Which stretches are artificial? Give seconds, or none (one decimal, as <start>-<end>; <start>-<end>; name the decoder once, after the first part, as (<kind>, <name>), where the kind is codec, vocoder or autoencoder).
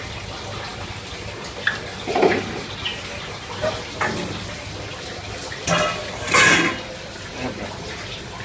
none